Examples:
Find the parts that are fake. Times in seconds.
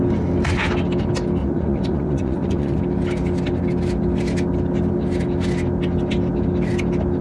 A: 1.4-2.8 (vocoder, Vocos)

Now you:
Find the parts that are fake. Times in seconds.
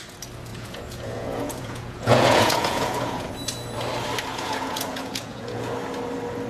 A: 0.5-3.3 (vocoder, Vocos); 4.3-5.7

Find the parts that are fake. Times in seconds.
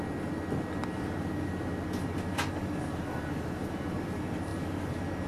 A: none